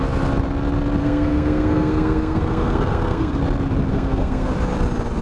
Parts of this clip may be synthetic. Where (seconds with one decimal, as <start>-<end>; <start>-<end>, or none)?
1.0-3.4; 3.9-4.5